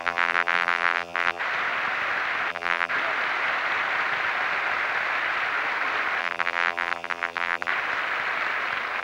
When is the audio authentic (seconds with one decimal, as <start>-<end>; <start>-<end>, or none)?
1.4-2.5; 2.9-6.2; 7.7-9.0